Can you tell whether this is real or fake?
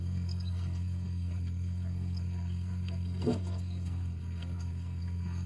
fake